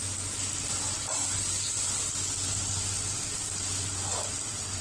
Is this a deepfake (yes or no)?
no